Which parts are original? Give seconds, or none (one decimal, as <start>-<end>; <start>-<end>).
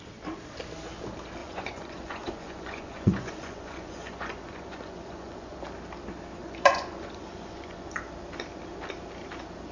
0.0-1.4; 5.6-6.4; 8.0-9.7